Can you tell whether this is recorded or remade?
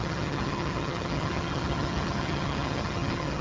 remade